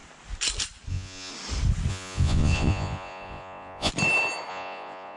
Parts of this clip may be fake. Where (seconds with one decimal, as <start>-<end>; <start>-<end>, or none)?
0.9-1.3; 1.9-3.9; 4.5-5.2

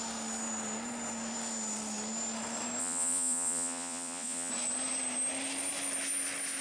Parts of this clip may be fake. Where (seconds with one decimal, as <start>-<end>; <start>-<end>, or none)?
2.8-4.5

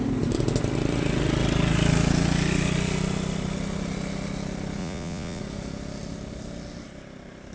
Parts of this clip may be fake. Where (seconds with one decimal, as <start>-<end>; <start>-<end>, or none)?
4.8-5.4

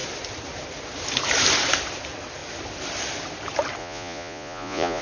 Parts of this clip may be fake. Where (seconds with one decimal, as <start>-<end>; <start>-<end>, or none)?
3.8-5.0

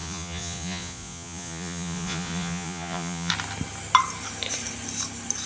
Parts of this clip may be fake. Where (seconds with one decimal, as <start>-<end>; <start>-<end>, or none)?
0.0-3.3